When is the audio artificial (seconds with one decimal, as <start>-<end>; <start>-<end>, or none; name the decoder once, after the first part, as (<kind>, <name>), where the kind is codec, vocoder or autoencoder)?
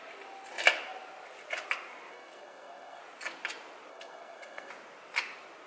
2.1-3.0 (codec, SNAC); 3.9-4.7